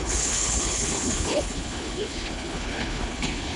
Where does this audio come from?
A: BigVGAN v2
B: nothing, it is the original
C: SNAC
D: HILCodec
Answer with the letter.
D